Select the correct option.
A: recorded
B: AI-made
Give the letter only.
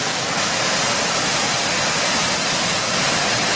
A